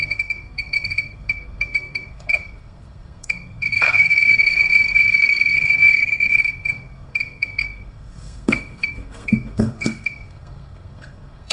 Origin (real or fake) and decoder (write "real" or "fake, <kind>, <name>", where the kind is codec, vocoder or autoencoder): fake, codec, SNAC